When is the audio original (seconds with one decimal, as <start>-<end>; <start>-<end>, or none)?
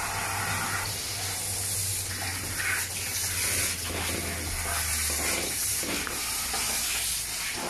0.0-7.7